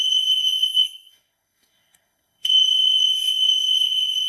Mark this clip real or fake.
fake